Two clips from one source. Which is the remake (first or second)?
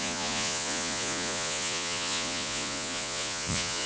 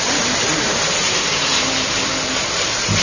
first